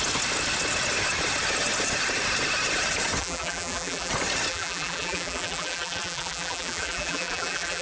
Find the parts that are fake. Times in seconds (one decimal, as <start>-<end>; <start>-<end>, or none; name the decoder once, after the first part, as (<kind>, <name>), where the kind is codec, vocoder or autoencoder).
3.2-4.1 (vocoder, BigVGAN v2); 4.5-7.8